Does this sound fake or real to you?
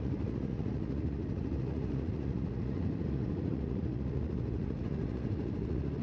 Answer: fake